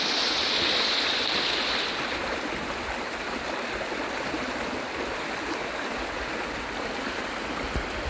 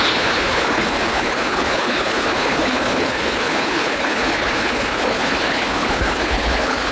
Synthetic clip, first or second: second